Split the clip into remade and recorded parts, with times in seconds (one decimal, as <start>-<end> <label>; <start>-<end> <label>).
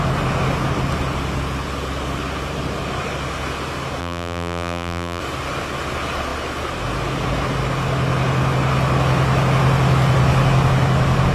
0.0-4.0 recorded; 4.0-5.2 remade; 5.2-11.3 recorded